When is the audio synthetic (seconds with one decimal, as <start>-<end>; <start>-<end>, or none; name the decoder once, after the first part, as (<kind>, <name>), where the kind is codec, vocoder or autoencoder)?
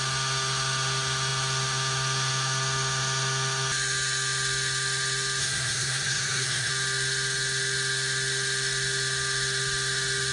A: 5.4-6.7 (codec, SNAC)